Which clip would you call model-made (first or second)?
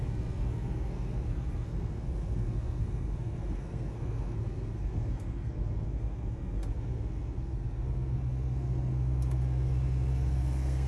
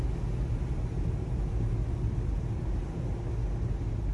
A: first